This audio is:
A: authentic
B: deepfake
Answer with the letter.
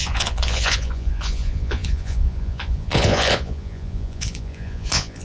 B